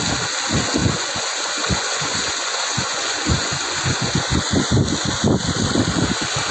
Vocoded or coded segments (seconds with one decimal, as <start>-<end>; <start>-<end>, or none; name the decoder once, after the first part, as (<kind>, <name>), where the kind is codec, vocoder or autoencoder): 0.8-4.7 (vocoder, Vocos)